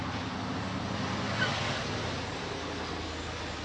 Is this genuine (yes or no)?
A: yes